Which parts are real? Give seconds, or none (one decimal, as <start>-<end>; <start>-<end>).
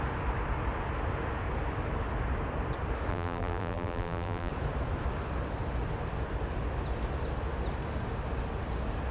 0.0-3.1; 4.5-9.1